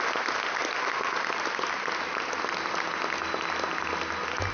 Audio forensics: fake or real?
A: real